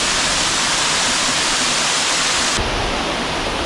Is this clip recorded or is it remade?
recorded